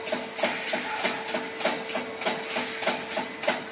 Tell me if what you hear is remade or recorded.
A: recorded